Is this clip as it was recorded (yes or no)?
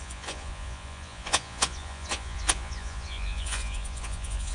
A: no